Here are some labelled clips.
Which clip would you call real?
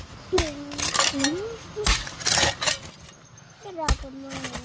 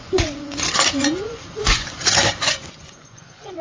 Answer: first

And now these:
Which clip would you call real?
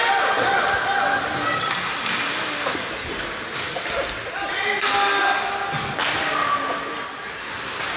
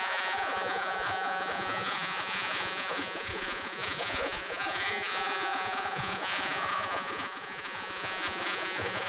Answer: first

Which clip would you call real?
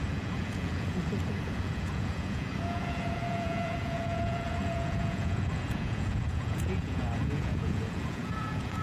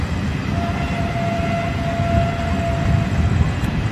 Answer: second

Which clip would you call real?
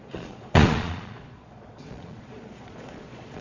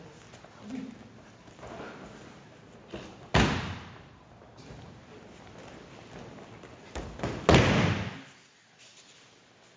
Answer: second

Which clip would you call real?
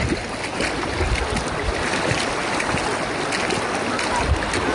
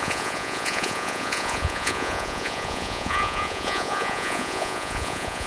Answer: first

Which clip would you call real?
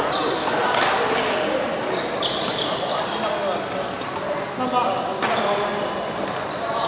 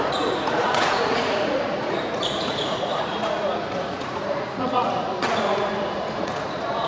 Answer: first